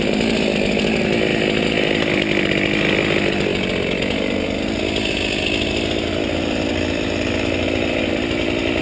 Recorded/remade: recorded